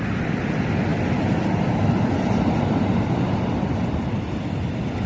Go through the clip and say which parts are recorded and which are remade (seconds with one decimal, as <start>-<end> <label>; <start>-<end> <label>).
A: 0.0-5.1 recorded